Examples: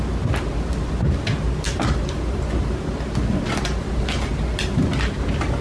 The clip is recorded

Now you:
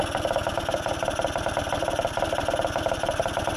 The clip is recorded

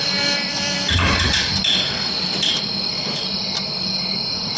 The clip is remade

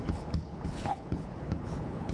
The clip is remade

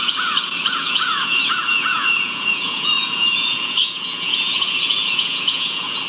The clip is remade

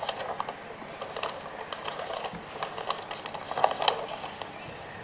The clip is recorded